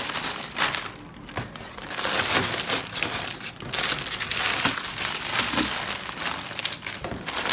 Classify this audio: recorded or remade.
recorded